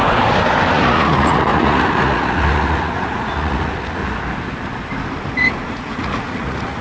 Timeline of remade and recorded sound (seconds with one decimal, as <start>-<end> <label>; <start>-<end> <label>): 0.0-0.7 recorded; 0.7-4.0 remade; 4.0-5.5 recorded; 5.5-6.8 remade